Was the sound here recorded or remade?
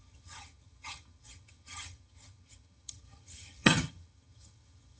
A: remade